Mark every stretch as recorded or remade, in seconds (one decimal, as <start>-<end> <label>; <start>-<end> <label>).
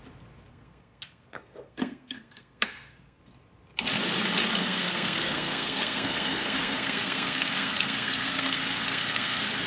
0.0-0.5 recorded; 0.5-3.2 remade; 3.2-4.6 recorded; 4.6-9.7 remade